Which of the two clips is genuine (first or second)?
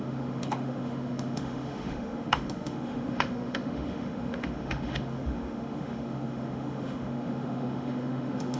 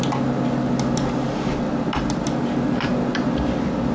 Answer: second